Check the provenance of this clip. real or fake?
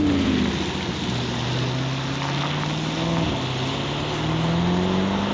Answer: real